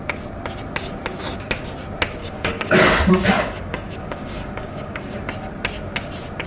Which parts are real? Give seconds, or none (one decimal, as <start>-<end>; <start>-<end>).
0.0-2.2; 5.2-6.5